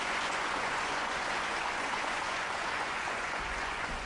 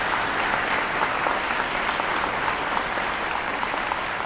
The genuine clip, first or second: second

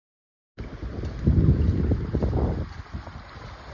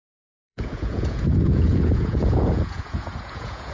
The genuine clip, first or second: first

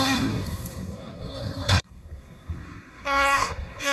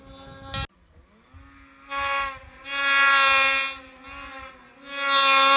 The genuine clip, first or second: second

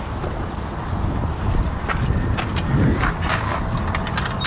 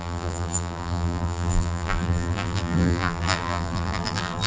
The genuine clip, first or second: first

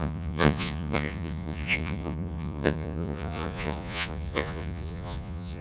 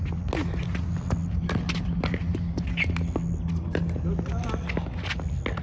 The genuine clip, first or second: second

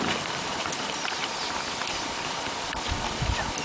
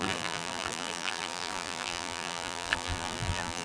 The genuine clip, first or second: first